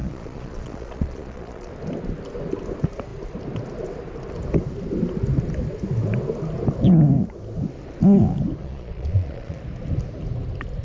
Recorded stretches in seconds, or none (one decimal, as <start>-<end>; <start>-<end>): 1.7-8.6; 9.6-10.8